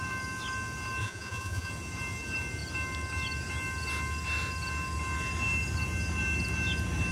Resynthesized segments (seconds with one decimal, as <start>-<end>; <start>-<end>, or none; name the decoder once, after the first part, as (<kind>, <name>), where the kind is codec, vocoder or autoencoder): 1.0-1.7 (vocoder, Vocos)